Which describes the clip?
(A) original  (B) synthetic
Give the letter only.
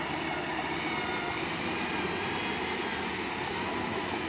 A